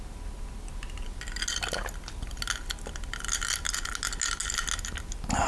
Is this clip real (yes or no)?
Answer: yes